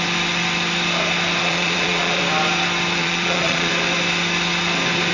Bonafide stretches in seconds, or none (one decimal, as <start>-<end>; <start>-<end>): 0.0-1.4; 2.2-3.0; 3.7-5.1